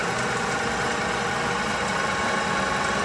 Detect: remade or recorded recorded